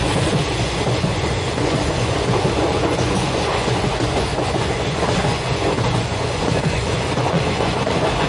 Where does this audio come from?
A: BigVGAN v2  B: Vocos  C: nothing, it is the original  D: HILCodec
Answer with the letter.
B